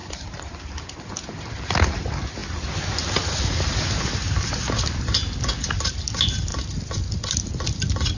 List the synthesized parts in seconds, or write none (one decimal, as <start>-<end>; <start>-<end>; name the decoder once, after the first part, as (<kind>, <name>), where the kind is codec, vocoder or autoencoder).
none